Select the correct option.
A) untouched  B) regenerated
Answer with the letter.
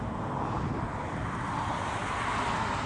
A